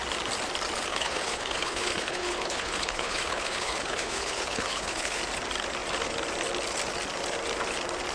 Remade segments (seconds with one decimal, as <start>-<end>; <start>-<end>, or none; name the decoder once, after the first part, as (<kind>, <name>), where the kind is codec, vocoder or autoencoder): 0.9-5.2 (codec, HILCodec)

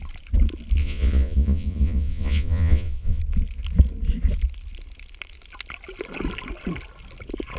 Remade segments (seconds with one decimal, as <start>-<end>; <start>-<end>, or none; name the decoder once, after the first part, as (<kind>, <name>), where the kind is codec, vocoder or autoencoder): 0.8-3.2 (vocoder, Vocos)